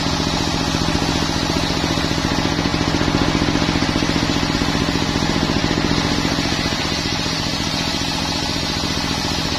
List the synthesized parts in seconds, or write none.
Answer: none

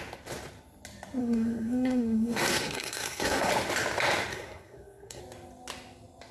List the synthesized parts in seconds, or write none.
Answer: 1.2-3.5 (codec, SNAC); 4.3-5.2

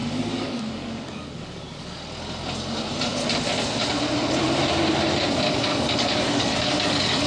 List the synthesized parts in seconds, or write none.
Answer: 0.0-2.0 (codec, DAC); 5.7-7.3

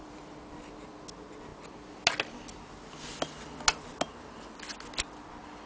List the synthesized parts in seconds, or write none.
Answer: none

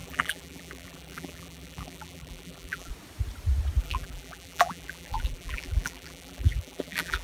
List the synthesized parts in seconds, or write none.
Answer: 0.0-2.9 (vocoder, BigVGAN v2); 3.8-7.2

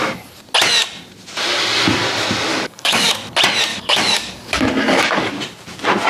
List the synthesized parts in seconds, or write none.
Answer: 2.5-3.1 (codec, DAC); 3.7-5.3